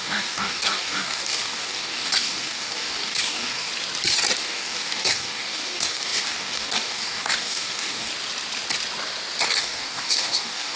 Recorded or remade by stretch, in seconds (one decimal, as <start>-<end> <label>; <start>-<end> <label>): 0.0-3.7 remade; 3.7-4.4 recorded; 4.4-8.1 remade; 8.1-9.6 recorded; 9.6-10.8 remade